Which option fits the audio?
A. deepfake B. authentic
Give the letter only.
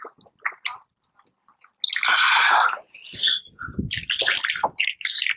B